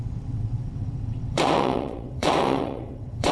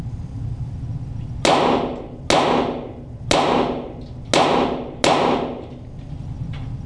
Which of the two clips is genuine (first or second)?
second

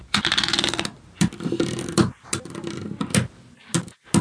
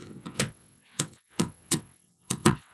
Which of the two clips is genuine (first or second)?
first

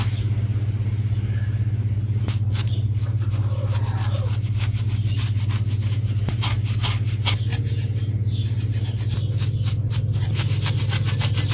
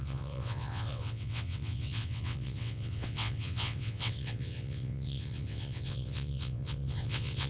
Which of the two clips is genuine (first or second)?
first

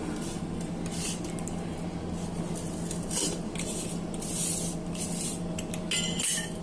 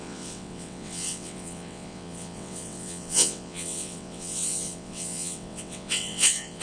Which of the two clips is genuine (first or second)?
first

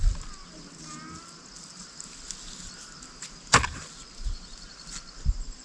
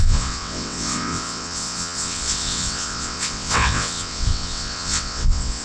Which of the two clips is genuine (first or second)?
first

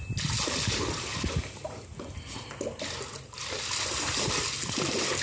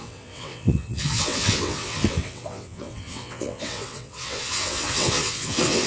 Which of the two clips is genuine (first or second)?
first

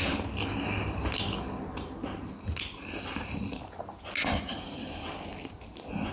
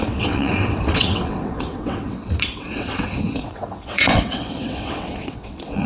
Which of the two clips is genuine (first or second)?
first